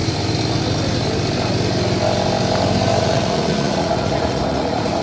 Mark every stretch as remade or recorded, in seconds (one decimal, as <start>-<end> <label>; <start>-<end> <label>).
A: 0.0-3.0 recorded; 3.0-5.0 remade